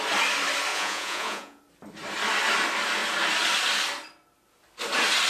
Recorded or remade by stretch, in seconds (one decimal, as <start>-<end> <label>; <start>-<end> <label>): 0.0-0.7 recorded; 0.7-1.6 remade; 1.6-5.3 recorded